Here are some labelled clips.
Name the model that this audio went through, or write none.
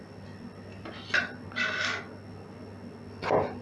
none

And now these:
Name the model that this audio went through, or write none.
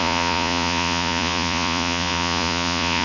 vocoder, Vocos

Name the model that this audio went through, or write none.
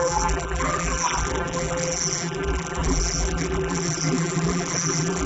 vocoder, BigVGAN v2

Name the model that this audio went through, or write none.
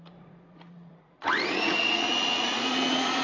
vocoder, Vocos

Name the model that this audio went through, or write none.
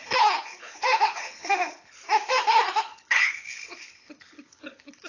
codec, HILCodec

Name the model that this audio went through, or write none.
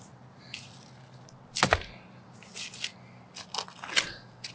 none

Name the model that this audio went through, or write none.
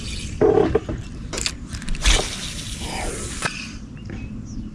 none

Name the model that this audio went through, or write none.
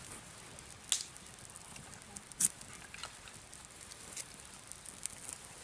none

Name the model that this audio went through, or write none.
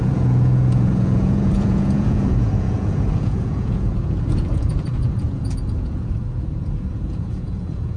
vocoder, Vocos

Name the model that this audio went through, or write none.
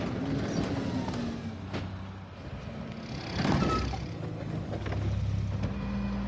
none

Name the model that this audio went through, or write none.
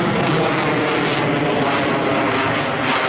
none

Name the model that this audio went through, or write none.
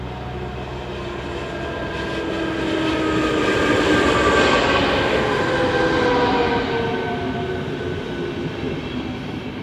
none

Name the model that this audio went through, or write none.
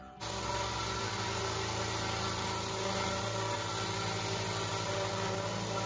none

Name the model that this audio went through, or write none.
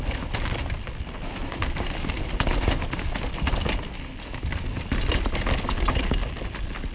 none